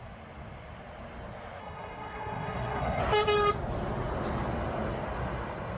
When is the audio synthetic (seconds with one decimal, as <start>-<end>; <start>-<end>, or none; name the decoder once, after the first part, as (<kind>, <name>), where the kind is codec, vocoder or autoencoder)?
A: 1.6-3.0 (codec, SNAC)